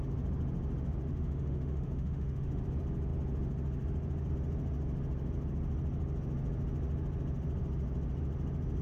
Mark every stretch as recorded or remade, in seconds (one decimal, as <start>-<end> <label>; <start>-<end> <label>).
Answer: 0.0-1.1 recorded; 1.1-2.6 remade; 2.6-8.8 recorded